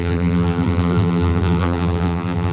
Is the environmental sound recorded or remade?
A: remade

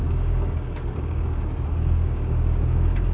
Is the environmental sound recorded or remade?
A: remade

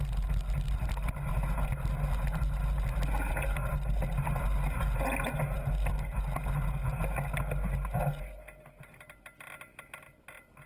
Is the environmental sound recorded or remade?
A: recorded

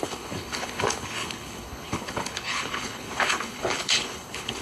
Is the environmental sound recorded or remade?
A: remade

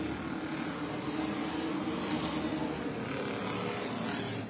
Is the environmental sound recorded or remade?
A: recorded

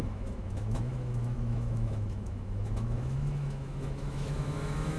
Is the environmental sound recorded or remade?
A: remade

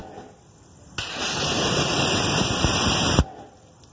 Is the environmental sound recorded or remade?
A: recorded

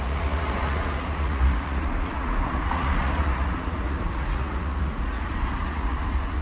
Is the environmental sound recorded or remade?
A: remade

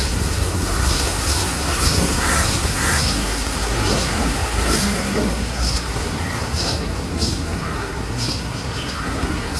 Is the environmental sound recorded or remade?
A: remade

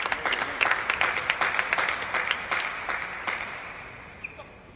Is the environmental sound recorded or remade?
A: recorded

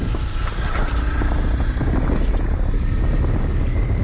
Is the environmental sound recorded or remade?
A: recorded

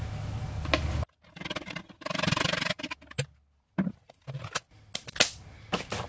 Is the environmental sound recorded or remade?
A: recorded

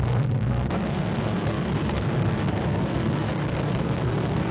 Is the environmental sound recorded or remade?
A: remade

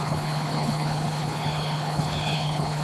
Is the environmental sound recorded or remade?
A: remade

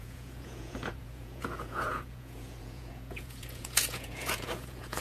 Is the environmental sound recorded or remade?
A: remade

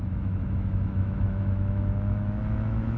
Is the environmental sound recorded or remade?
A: remade